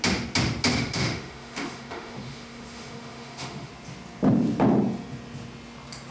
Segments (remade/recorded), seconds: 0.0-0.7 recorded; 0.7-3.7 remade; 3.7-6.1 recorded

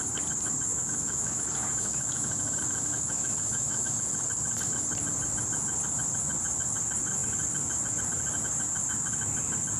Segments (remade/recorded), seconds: 0.0-0.7 recorded; 0.7-4.0 remade; 4.0-9.8 recorded

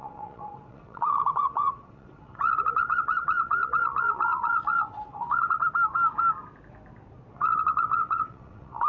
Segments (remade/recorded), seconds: 0.0-5.6 remade; 5.6-7.3 recorded; 7.3-8.9 remade